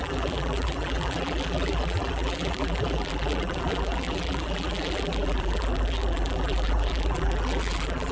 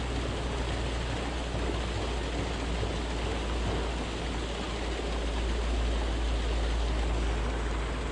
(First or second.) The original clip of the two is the second